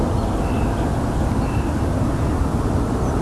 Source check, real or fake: real